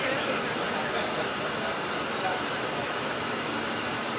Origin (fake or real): real